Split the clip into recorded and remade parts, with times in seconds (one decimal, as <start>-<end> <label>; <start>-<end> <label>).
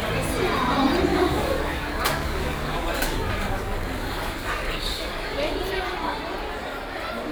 0.0-1.1 recorded; 1.1-5.5 remade; 5.5-7.3 recorded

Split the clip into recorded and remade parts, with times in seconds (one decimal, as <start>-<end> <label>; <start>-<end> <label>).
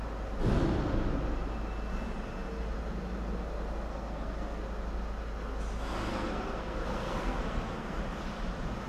0.0-3.9 recorded; 3.9-4.6 remade; 4.6-6.1 recorded; 6.1-8.0 remade; 8.0-8.9 recorded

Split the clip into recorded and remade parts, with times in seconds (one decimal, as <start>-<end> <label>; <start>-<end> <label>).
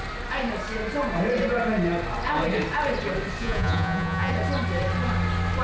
0.0-3.4 recorded; 3.4-4.3 remade; 4.3-5.6 recorded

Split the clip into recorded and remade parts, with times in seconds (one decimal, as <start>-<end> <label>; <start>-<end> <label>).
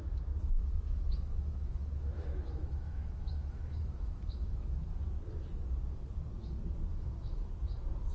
0.0-4.9 remade; 4.9-6.9 recorded; 6.9-7.5 remade; 7.5-8.1 recorded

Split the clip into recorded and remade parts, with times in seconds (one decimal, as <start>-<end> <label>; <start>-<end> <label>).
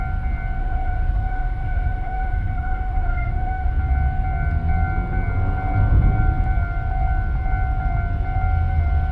0.0-0.6 recorded; 0.6-3.7 remade; 3.7-9.1 recorded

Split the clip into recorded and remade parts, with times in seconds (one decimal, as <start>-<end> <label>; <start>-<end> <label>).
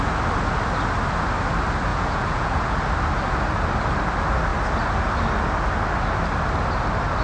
0.0-1.9 recorded; 1.9-2.8 remade; 2.8-7.2 recorded